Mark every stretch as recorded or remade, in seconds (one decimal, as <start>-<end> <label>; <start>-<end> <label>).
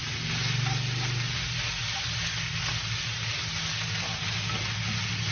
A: 0.0-5.3 recorded